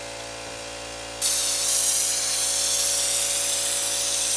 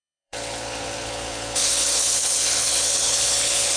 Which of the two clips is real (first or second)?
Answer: first